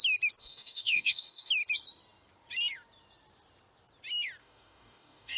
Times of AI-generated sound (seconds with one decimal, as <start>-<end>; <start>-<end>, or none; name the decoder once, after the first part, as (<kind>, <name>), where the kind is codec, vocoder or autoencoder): 0.4-1.5 (codec, DAC); 4.4-5.4